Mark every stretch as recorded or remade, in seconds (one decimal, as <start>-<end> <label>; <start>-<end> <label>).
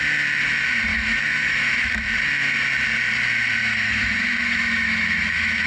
0.0-0.9 recorded; 0.9-1.9 remade; 1.9-3.6 recorded; 3.6-5.7 remade